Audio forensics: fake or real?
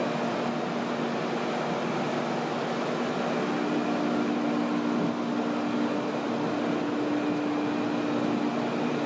real